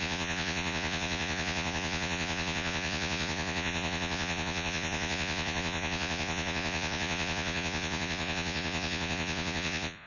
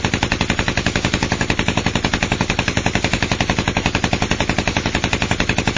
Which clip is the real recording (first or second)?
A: second